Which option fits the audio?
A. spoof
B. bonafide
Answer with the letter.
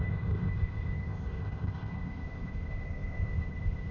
A